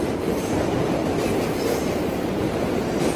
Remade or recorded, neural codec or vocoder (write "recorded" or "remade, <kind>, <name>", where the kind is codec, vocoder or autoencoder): remade, vocoder, BigVGAN v2